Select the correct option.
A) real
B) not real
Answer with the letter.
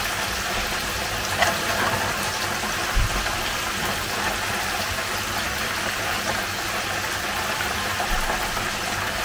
A